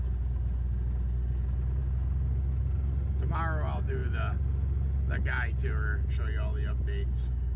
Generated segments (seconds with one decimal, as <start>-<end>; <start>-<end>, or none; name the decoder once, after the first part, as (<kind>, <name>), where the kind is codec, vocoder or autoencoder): none